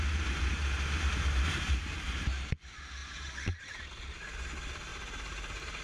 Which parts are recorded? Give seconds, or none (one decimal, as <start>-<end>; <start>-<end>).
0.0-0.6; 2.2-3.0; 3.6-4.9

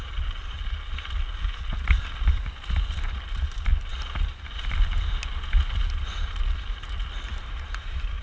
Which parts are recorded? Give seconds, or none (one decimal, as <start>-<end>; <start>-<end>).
0.0-3.9; 4.4-7.3

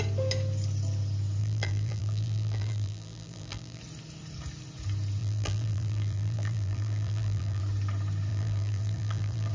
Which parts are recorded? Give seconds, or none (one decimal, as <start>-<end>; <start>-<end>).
0.0-1.4; 3.8-5.2; 7.6-8.3

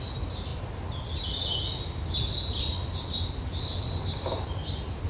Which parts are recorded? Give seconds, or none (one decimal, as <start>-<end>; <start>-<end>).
0.0-5.1

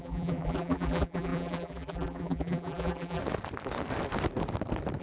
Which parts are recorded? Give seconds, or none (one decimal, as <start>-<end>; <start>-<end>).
3.2-5.0